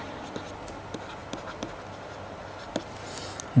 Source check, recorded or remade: recorded